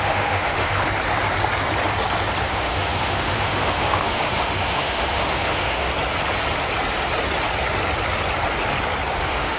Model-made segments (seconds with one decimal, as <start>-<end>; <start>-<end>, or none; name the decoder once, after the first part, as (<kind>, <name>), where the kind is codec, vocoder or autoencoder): 0.0-0.8 (autoencoder, DAC-VAE); 2.4-5.9; 9.2-9.6